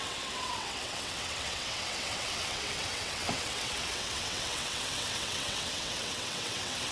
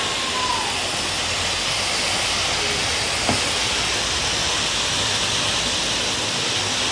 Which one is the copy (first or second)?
first